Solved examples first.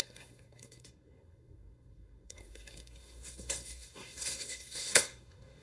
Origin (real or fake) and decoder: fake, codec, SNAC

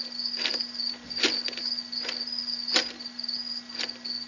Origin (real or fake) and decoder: real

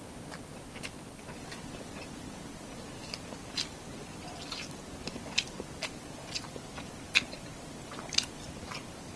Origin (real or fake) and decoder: fake, vocoder, BigVGAN v2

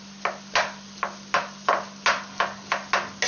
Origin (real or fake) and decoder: real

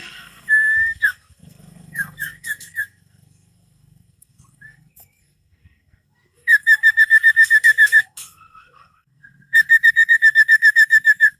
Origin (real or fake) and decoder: fake, codec, SNAC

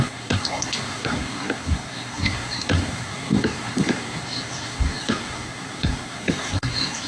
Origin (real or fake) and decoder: fake, codec, SNAC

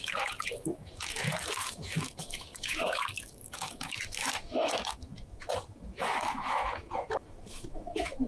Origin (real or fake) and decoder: fake, autoencoder, DAC-VAE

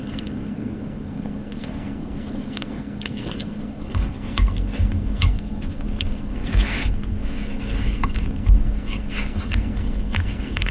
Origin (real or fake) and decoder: fake, codec, SNAC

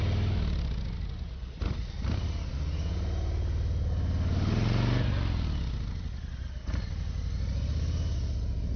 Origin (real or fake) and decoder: real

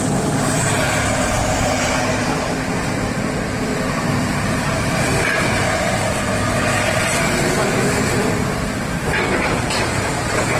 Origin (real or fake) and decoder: fake, vocoder, BigVGAN v2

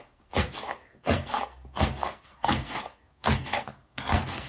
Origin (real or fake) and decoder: fake, codec, SNAC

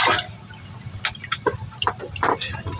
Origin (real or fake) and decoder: real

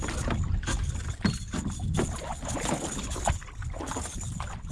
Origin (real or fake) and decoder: real